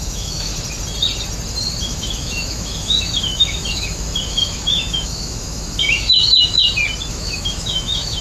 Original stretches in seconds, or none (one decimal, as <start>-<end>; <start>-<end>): 0.5-1.8; 6.6-7.1